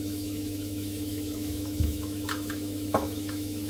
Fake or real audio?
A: fake